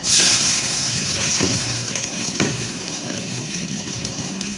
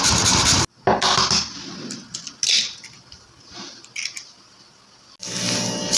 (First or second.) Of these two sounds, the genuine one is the second